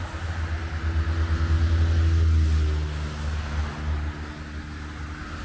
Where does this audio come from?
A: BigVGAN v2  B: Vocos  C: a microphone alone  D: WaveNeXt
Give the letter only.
C